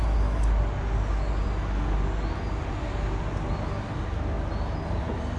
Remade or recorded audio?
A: recorded